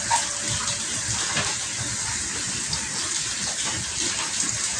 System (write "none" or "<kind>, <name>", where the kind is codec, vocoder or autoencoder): none